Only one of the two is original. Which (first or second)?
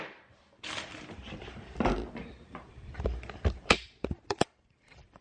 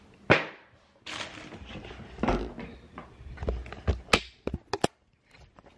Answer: second